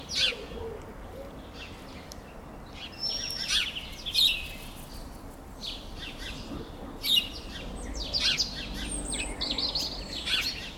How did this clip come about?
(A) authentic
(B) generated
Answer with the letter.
A